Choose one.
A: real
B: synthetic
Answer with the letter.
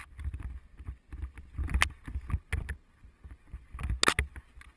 A